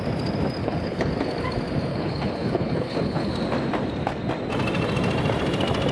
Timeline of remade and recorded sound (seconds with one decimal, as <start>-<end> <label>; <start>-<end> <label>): 0.0-0.6 recorded; 0.6-1.1 remade; 1.1-1.9 recorded; 1.9-3.3 remade; 3.3-5.9 recorded